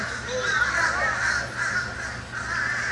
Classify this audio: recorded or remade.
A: recorded